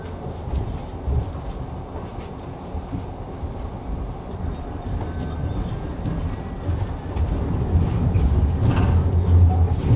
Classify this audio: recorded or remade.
recorded